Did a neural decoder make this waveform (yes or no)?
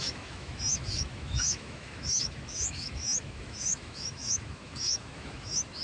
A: yes